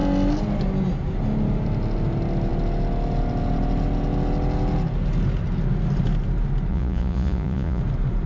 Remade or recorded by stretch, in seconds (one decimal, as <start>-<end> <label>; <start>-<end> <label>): 0.0-6.7 recorded; 6.7-7.8 remade; 7.8-8.3 recorded